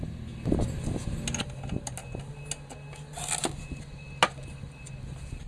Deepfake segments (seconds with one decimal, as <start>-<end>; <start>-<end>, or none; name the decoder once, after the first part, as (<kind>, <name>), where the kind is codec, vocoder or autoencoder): none